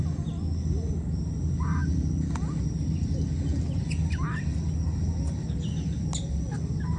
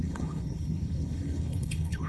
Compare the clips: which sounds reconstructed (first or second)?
second